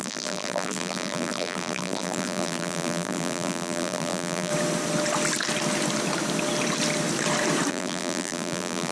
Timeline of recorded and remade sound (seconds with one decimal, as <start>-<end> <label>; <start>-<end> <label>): 0.0-4.5 remade; 4.5-7.7 recorded; 7.7-8.9 remade

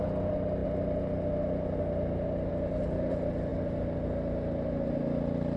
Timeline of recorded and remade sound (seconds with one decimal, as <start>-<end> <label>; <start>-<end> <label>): 0.0-5.6 recorded